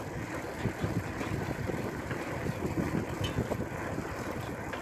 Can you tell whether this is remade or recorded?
recorded